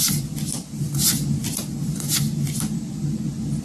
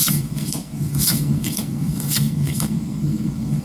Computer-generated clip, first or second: second